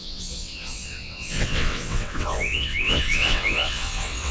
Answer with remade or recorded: remade